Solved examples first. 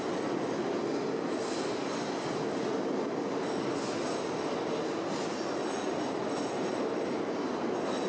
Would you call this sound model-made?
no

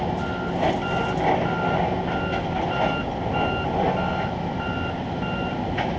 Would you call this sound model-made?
no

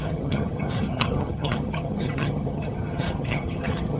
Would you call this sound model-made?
yes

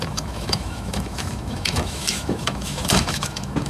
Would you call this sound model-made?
yes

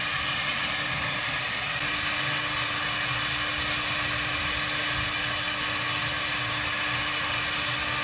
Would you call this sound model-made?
no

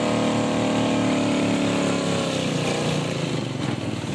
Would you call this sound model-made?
no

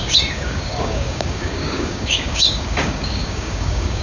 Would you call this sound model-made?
yes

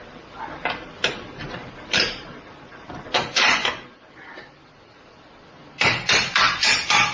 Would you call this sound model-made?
no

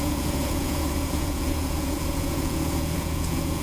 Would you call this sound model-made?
yes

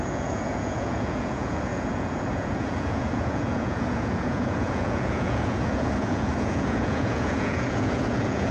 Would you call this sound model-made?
yes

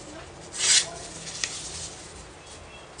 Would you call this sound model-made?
no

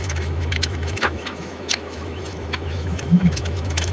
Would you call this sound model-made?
yes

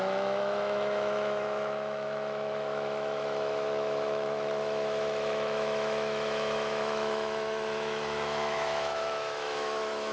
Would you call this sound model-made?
yes